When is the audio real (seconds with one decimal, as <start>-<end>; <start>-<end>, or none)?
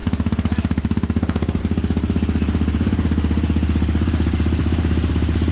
1.6-4.6; 5.1-5.5